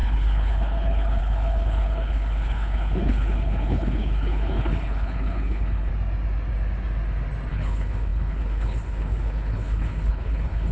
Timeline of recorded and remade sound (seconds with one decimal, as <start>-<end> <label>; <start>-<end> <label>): 0.0-5.9 remade; 5.9-7.5 recorded; 7.5-10.7 remade